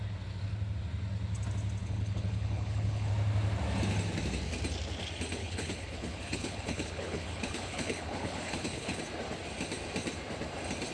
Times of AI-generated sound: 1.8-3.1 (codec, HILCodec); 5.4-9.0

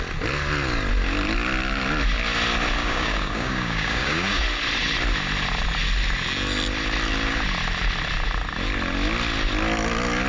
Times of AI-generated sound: 2.8-4.4 (codec, DAC)

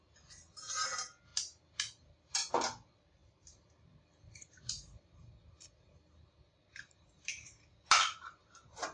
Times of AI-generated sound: none

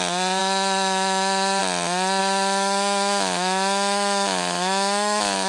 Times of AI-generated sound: 0.4-1.6 (autoencoder, DAC-VAE); 2.2-5.5

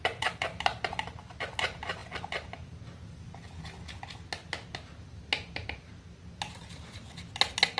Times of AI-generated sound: none

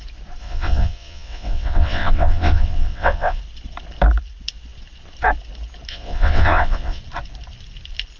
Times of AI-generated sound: 0.4-3.4 (vocoder, WaveNeXt); 5.9-7.0

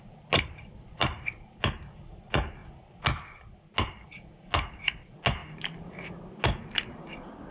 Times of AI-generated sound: none

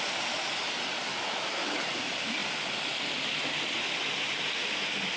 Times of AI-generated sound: 1.1-1.8 (autoencoder, DAC-VAE)